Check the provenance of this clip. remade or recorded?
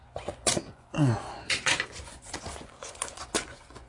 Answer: remade